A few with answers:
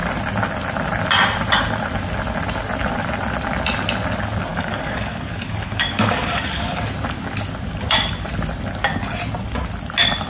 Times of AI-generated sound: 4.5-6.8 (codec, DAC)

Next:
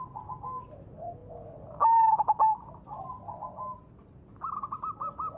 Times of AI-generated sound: none

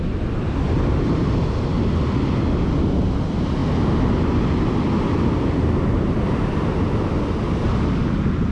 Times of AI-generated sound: none

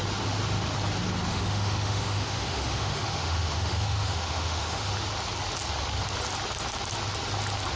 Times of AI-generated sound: 1.3-4.9 (autoencoder, DAC-VAE)

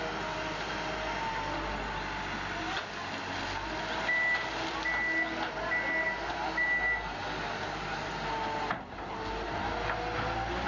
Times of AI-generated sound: none

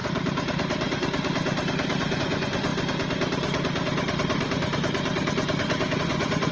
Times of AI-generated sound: 2.2-2.7 (vocoder, Vocos); 6.0-6.5

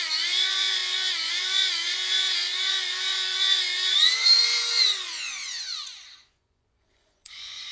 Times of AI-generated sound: 0.0-7.7 (vocoder, Vocos)

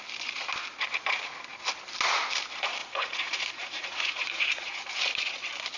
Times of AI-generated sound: 2.8-4.9 (vocoder, Vocos)